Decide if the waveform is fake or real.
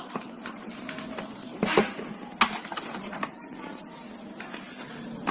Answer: real